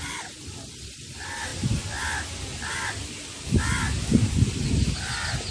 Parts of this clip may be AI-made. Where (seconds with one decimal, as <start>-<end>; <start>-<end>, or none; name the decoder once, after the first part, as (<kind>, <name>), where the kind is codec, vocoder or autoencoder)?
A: none